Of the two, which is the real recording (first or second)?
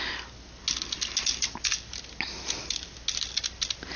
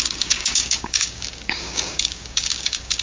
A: first